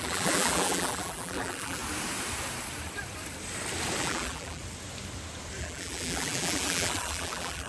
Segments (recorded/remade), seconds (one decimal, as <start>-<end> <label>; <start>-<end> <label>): 0.0-1.8 remade; 1.8-4.0 recorded; 4.0-4.6 remade; 4.6-5.6 recorded; 5.6-7.7 remade